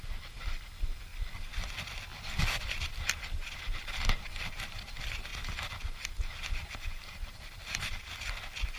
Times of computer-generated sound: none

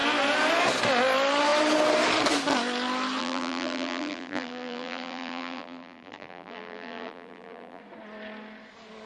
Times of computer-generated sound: 3.2-7.8 (vocoder, BigVGAN v2)

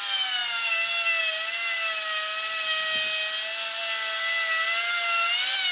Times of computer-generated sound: none

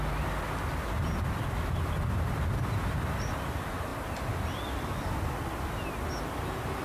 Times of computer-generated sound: none